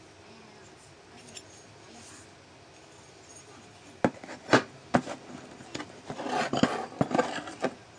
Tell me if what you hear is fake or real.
real